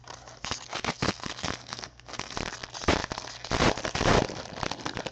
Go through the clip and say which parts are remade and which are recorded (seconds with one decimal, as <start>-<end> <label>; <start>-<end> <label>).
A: 0.0-0.4 recorded; 0.4-2.3 remade; 2.3-5.1 recorded